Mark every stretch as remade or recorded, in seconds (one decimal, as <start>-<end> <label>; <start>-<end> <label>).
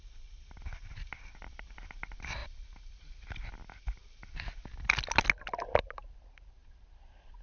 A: 0.0-7.4 recorded